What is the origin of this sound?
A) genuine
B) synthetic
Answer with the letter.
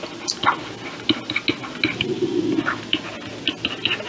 A